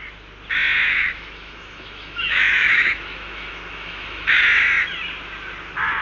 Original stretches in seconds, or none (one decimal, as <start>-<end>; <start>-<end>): 0.0-0.8; 4.4-6.0